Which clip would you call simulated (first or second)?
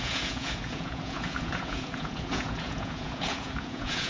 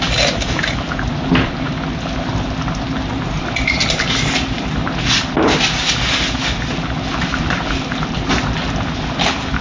first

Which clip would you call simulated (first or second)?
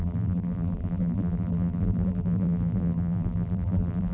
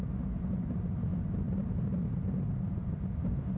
first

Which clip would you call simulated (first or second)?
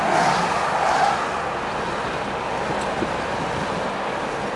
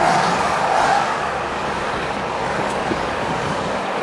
second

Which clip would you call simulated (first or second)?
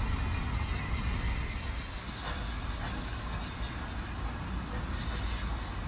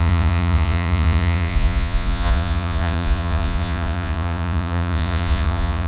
second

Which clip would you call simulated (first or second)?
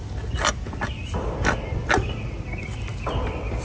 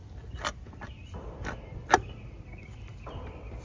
second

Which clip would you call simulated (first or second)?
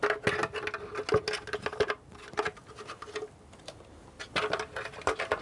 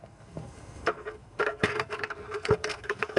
second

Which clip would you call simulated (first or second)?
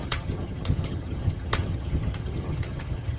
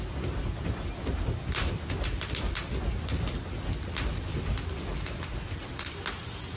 first